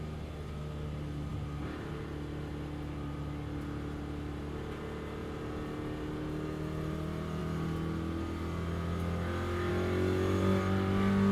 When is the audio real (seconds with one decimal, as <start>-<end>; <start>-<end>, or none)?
0.0-11.3